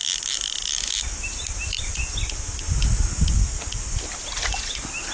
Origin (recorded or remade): recorded